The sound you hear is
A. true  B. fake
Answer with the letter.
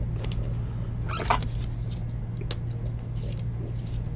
A